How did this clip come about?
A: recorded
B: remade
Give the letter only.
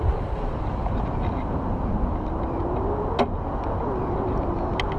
A